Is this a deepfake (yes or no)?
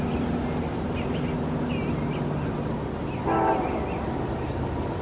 no